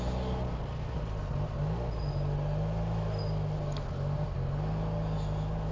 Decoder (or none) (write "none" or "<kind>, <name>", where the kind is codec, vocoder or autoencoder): none